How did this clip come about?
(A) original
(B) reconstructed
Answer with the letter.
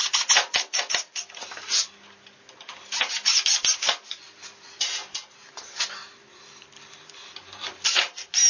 A